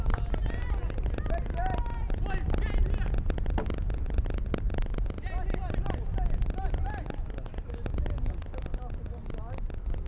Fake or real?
real